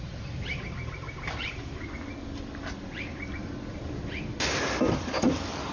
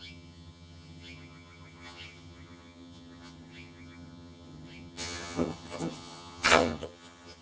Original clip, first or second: first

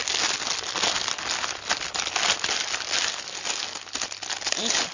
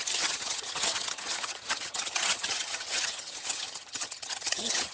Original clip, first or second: first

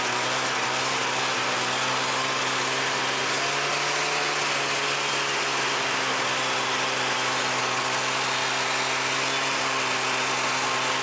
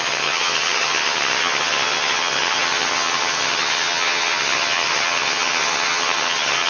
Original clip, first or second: first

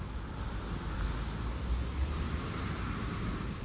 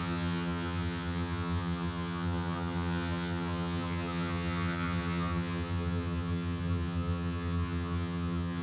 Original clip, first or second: first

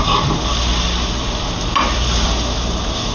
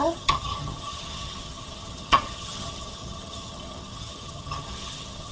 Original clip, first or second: first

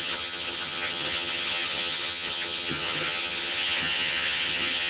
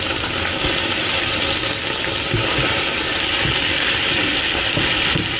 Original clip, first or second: second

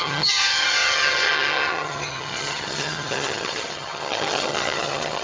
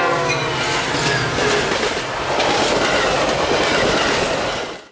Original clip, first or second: second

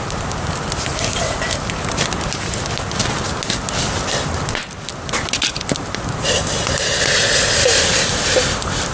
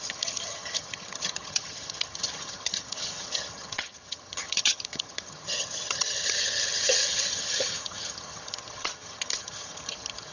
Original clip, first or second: first